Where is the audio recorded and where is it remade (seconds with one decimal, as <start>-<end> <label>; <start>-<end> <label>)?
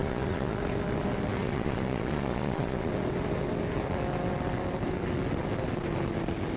0.0-0.6 remade; 0.6-1.4 recorded; 1.4-2.9 remade; 2.9-6.6 recorded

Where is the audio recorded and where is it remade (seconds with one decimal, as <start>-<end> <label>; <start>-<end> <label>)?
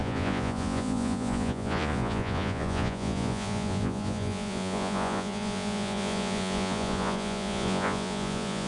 0.0-8.7 remade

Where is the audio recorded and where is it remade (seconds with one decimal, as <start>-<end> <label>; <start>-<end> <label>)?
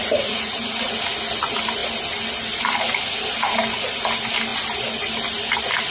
0.0-0.9 remade; 0.9-5.9 recorded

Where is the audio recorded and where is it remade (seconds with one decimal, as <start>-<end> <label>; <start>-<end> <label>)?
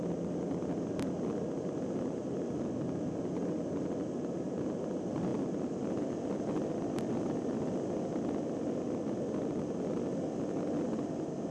0.0-11.5 recorded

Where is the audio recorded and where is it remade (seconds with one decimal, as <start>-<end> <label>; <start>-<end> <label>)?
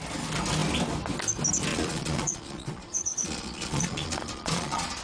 0.0-1.7 recorded; 1.7-5.0 remade